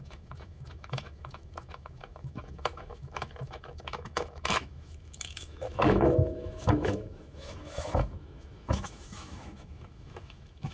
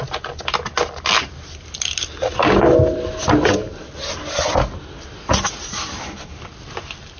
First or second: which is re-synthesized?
first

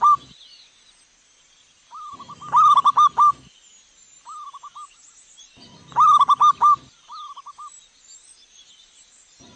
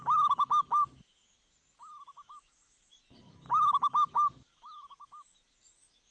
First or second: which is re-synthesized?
second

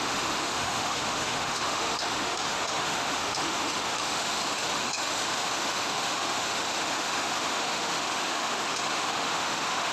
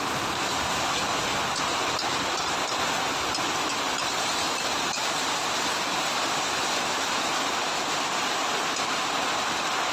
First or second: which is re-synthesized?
first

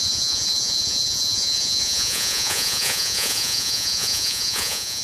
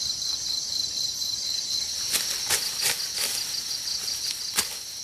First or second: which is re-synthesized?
first